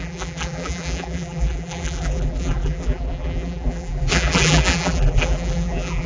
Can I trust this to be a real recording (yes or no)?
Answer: no